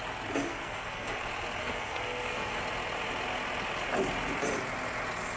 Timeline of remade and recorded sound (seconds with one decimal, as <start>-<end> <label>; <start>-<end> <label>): 0.0-0.5 recorded; 0.5-1.2 remade; 1.2-1.6 recorded; 1.6-2.6 remade; 2.6-5.4 recorded